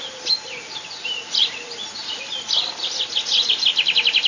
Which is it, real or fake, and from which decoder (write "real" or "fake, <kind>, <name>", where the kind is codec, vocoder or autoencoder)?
real